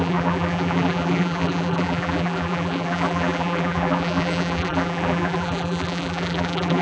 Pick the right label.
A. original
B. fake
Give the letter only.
B